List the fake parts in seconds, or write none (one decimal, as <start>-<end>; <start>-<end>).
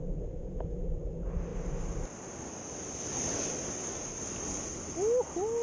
none